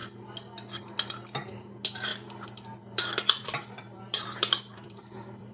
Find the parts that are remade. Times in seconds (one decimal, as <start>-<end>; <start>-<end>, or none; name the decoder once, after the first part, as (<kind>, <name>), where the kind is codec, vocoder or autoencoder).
2.1-5.5 (vocoder, BigVGAN v2)